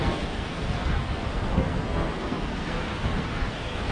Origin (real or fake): fake